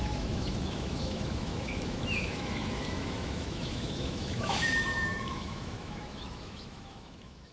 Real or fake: fake